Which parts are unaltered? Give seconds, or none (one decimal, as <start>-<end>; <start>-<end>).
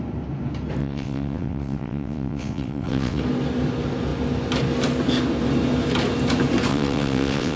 0.0-0.8; 3.2-6.7